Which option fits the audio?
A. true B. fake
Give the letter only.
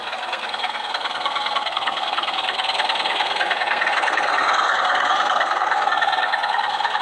B